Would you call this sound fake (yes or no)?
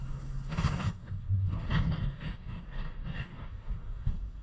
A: yes